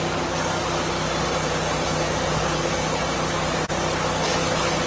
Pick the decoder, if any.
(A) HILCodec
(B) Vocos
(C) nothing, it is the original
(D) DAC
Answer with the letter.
C